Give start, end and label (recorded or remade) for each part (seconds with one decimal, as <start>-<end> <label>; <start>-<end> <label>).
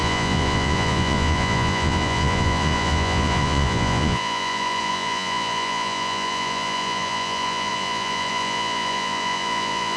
0.0-10.0 remade